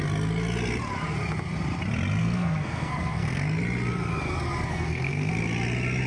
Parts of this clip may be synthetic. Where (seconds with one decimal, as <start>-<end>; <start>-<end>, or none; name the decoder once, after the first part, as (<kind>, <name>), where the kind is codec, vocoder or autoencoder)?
2.2-3.6 (codec, SNAC); 4.7-5.3